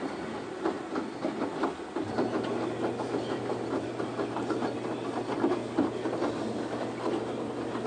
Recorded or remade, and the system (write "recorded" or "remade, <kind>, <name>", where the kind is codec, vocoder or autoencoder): recorded